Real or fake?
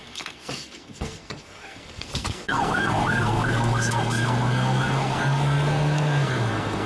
fake